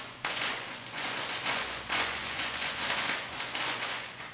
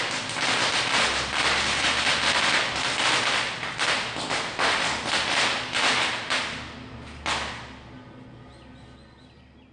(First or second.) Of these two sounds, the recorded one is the second